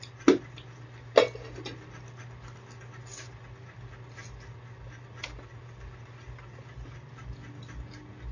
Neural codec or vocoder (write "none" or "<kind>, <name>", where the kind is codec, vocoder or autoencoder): none